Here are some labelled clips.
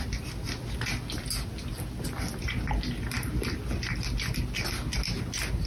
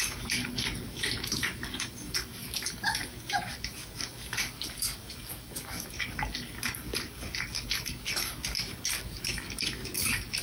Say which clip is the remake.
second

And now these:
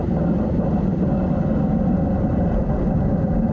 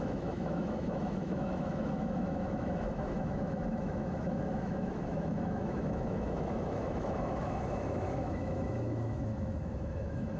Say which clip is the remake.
second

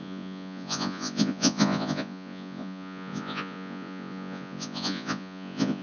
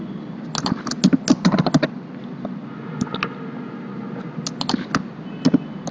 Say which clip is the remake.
first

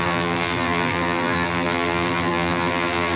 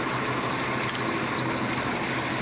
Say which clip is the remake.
first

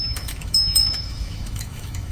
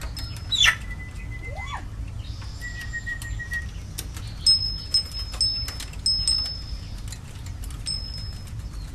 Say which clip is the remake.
first